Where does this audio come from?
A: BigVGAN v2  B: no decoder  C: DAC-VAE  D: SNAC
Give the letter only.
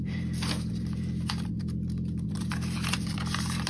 A